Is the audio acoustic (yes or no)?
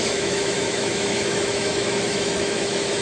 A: no